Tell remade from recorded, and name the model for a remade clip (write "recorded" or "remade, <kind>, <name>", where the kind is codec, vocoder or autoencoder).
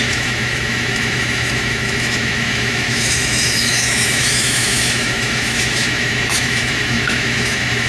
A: remade, autoencoder, DAC-VAE